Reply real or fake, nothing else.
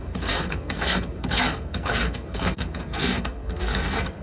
fake